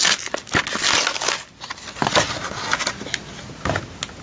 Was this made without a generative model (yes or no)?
yes